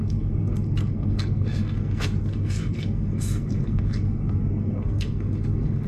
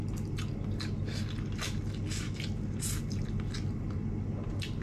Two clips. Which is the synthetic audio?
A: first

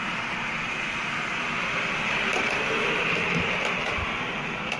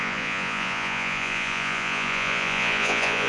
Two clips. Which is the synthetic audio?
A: second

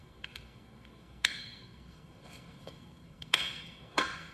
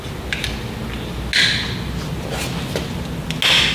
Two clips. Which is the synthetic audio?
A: first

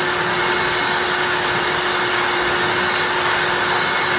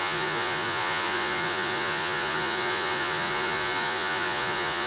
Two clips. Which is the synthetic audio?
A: second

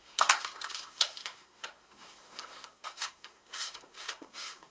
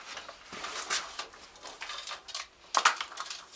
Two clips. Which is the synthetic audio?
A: first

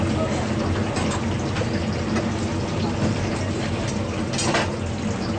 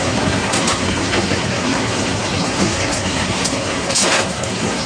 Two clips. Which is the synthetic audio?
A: second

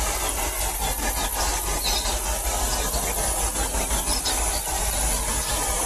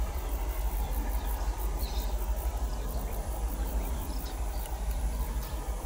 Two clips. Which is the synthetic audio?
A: second